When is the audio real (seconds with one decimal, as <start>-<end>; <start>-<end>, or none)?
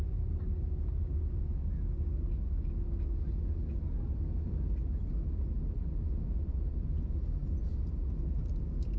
0.0-9.0